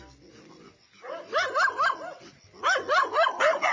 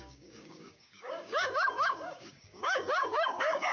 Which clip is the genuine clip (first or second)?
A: first